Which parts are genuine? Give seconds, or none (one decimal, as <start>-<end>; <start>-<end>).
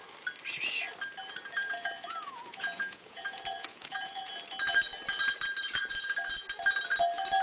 0.0-1.6; 4.3-7.4